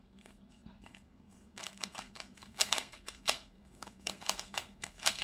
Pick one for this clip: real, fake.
fake